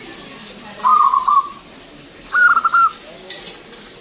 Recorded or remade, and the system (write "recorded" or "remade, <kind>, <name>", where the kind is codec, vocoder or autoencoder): recorded